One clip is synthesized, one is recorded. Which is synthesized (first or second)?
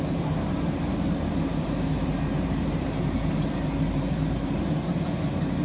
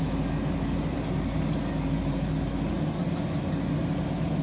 first